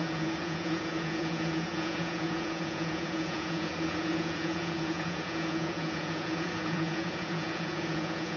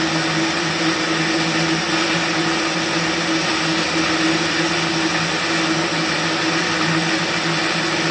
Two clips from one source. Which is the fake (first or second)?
first